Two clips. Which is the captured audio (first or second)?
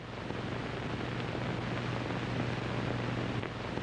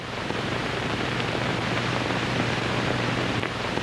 first